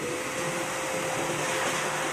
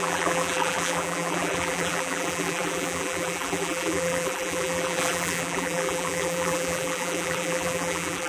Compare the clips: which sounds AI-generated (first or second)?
second